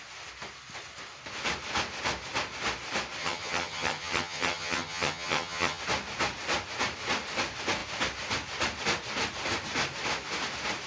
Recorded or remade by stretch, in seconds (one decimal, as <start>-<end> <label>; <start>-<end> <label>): 0.0-3.2 recorded; 3.2-5.8 remade; 5.8-10.9 recorded